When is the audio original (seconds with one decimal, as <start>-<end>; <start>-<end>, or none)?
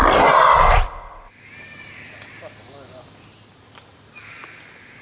0.0-5.0